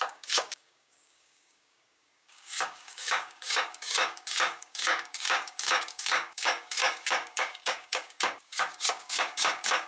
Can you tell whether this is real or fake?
fake